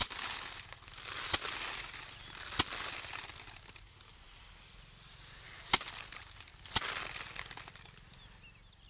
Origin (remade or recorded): recorded